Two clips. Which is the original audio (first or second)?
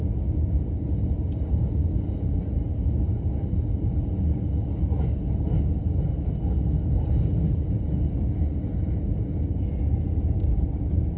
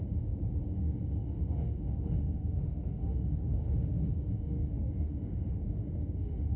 first